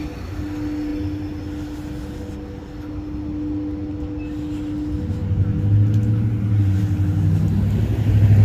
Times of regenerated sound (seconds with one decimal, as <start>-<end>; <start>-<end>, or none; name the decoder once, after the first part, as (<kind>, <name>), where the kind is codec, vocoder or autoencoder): none